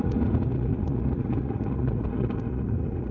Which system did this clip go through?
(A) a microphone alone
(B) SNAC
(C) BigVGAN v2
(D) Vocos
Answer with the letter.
D